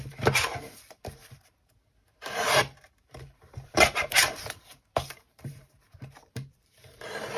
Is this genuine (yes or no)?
no